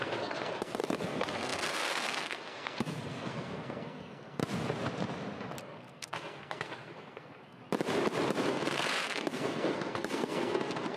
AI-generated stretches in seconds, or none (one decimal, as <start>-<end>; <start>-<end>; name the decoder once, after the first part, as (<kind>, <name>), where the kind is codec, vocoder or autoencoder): 0.0-4.4 (codec, SNAC); 5.6-7.6; 8.5-11.0